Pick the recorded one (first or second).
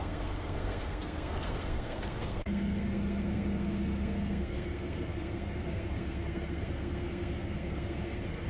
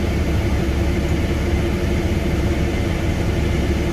second